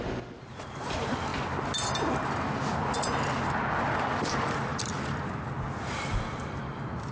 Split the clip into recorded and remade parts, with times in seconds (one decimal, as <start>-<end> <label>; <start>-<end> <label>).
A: 0.0-1.3 remade; 1.3-4.2 recorded; 4.2-4.7 remade; 4.7-6.0 recorded; 6.0-7.1 remade